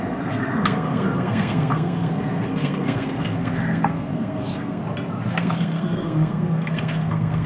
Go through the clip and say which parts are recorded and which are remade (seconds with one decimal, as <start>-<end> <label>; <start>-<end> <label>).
0.0-4.8 remade; 4.8-5.3 recorded; 5.3-7.5 remade